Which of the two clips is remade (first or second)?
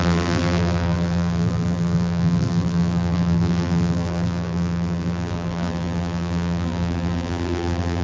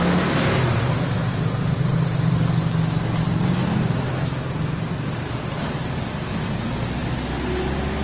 first